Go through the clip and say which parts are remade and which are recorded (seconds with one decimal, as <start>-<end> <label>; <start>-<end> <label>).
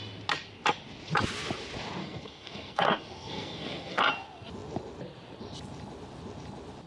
0.0-2.0 recorded; 2.0-4.0 remade; 4.0-6.9 recorded